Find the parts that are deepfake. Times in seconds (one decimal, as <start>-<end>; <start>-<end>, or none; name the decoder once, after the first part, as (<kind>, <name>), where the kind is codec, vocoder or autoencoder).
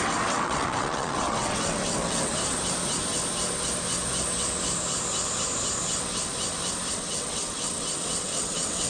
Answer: 0.0-2.4 (vocoder, WaveNeXt); 6.9-8.9